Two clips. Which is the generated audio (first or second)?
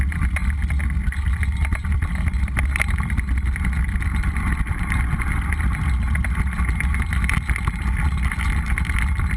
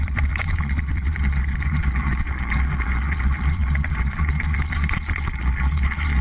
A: second